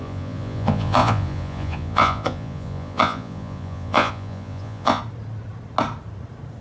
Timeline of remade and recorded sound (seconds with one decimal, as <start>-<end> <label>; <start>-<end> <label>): 0.0-5.0 remade; 5.0-6.6 recorded